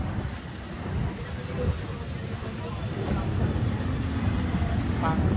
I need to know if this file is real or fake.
real